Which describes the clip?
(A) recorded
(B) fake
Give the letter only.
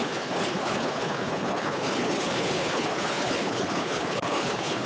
B